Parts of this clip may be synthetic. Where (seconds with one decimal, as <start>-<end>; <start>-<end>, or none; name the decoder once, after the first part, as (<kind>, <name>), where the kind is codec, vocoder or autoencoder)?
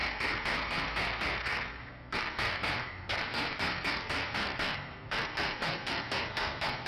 0.0-6.9 (codec, SNAC)